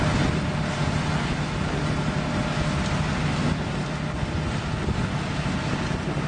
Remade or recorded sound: recorded